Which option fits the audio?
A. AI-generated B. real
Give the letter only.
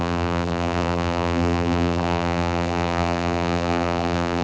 A